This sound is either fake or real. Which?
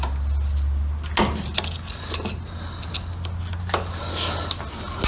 real